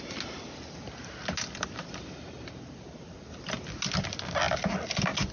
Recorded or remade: recorded